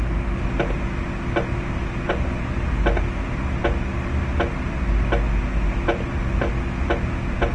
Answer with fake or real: real